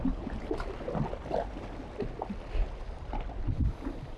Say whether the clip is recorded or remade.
recorded